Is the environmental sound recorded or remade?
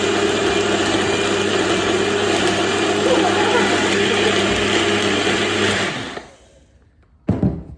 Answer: recorded